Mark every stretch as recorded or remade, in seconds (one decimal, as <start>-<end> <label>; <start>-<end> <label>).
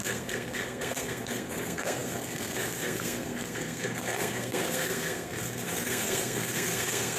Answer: 0.0-7.2 remade